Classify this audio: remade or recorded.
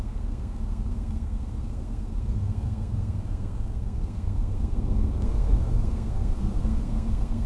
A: remade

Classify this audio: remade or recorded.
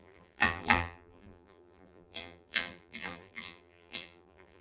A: remade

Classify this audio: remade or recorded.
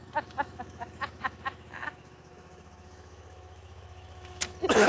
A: remade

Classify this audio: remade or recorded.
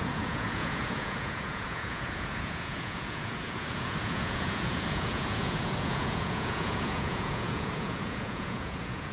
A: remade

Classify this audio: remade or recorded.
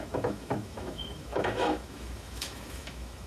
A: remade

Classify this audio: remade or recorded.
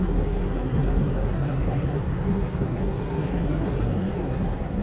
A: remade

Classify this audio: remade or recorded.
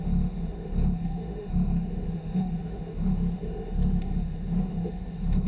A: remade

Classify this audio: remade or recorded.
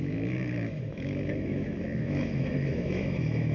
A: remade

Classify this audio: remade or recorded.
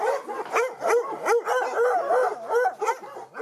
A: recorded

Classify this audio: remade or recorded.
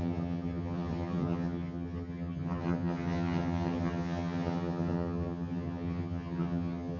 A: remade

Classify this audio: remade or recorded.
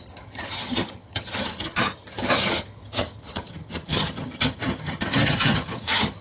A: remade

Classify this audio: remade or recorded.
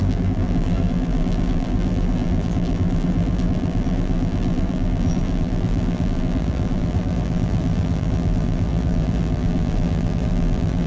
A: remade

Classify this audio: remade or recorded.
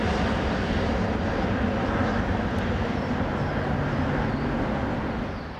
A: recorded